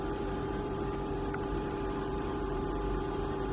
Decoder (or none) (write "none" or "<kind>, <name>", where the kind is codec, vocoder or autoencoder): vocoder, BigVGAN v2